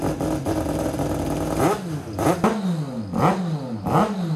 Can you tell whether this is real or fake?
real